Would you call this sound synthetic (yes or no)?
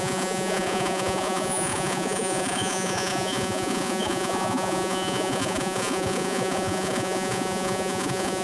yes